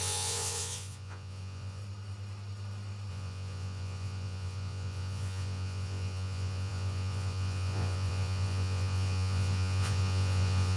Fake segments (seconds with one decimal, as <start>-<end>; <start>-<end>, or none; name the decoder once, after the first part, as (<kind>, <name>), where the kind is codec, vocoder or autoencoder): 0.0-1.8 (vocoder, Vocos); 3.1-10.8